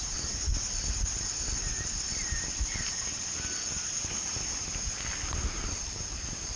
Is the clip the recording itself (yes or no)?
yes